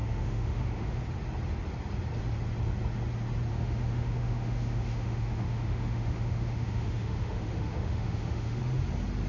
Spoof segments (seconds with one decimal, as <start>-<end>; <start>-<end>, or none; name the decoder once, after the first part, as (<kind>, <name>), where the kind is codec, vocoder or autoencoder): 0.0-1.0 (autoencoder, DAC-VAE); 3.5-8.6